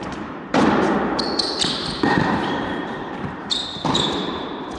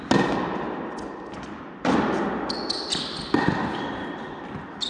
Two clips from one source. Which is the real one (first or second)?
second